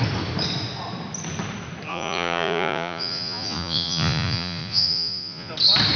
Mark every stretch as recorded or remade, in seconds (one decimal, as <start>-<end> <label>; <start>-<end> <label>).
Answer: 0.0-1.9 recorded; 1.9-5.5 remade; 5.5-6.0 recorded